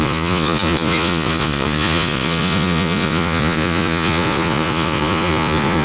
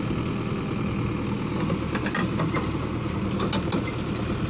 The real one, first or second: second